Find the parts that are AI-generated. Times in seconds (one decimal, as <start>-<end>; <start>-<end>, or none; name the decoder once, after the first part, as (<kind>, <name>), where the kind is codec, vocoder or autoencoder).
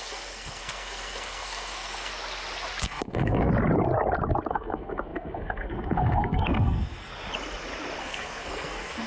0.0-2.1 (codec, SNAC); 2.8-3.5; 4.5-7.1; 8.0-9.1